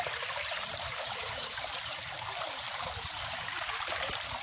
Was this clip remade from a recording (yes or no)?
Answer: yes